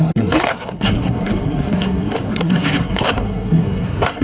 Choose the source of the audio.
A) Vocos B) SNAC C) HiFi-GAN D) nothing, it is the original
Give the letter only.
B